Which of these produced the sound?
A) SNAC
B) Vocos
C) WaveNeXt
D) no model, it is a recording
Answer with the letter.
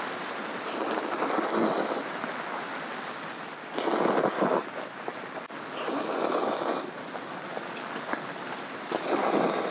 D